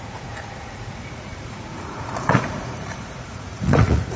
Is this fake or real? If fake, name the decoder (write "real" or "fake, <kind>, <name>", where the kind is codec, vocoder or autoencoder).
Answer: fake, vocoder, Vocos